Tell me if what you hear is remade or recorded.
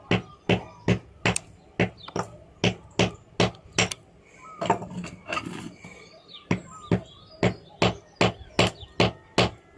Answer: recorded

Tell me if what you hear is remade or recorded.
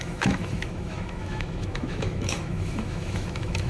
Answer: remade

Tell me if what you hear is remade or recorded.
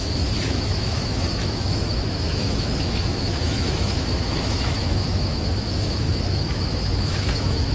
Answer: remade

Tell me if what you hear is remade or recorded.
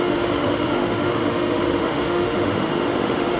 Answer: remade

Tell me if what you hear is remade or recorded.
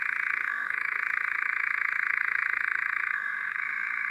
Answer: remade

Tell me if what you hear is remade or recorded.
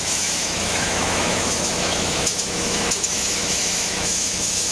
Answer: remade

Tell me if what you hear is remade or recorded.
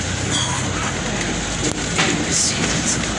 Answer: recorded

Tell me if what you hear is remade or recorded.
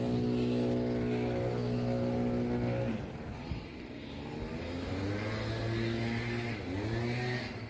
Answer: recorded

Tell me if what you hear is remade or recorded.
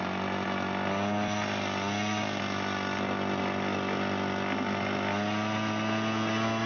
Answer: recorded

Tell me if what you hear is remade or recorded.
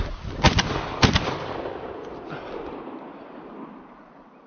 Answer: recorded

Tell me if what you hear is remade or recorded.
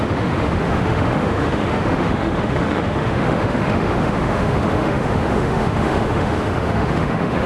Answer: remade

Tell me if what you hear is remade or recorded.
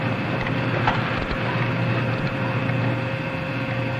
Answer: recorded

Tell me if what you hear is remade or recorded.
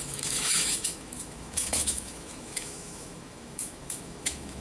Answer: remade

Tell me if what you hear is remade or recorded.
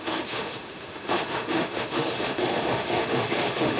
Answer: remade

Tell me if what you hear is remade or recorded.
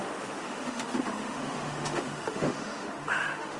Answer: remade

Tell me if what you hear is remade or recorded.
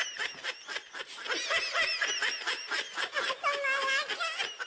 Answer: recorded